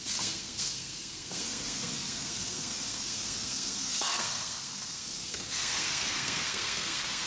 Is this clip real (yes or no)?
no